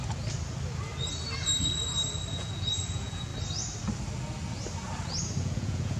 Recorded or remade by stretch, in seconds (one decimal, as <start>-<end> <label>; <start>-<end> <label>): 0.0-2.3 recorded; 2.3-3.3 remade; 3.3-5.4 recorded; 5.4-6.0 remade